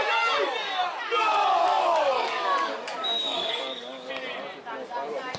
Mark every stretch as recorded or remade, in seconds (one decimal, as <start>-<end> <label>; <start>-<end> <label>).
0.0-1.6 recorded; 1.6-4.1 remade; 4.1-5.4 recorded